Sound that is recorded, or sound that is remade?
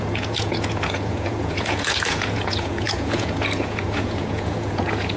remade